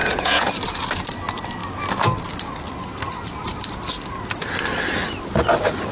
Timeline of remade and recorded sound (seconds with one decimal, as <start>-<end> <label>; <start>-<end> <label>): 0.0-0.5 remade; 0.5-5.9 recorded